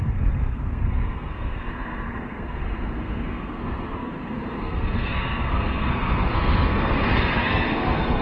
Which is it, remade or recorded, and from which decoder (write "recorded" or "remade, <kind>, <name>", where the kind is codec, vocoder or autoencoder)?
remade, codec, SNAC